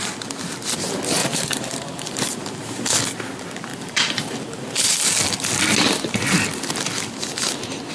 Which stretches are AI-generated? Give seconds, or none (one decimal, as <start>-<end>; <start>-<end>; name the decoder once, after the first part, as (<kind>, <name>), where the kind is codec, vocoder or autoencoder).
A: 1.2-2.9 (vocoder, BigVGAN v2); 3.7-5.1